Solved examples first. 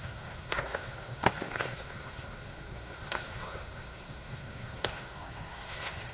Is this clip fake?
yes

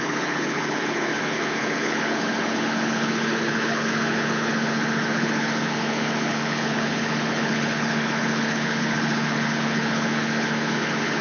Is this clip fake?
yes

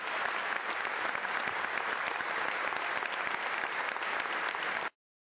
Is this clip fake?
no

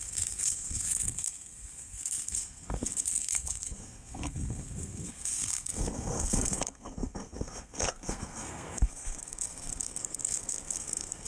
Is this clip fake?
yes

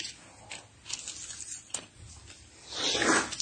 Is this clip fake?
no